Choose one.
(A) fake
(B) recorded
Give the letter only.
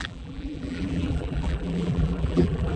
A